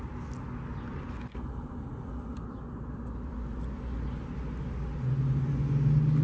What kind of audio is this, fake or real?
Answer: real